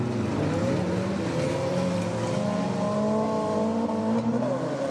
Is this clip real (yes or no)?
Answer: yes